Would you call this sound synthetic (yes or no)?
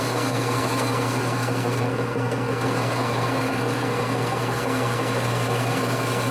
yes